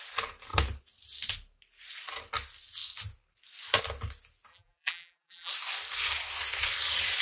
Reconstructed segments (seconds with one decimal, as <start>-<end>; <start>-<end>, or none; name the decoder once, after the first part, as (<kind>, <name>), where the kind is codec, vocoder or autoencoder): 4.5-5.5 (vocoder, BigVGAN v2)